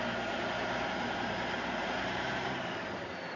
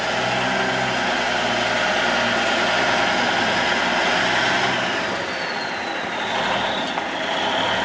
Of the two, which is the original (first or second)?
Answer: second